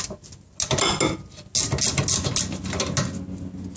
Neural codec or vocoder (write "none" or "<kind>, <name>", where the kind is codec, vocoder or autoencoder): none